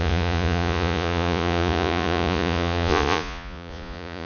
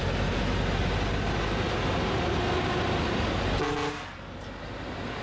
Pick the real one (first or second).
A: second